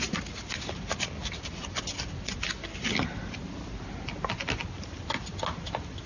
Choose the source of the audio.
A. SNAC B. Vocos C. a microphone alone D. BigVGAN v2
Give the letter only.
C